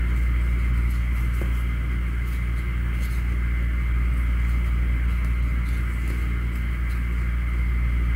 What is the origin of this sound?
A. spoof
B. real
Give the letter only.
B